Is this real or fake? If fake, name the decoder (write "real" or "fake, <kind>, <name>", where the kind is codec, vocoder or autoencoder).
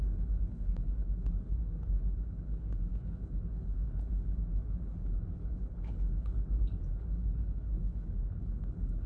fake, codec, HILCodec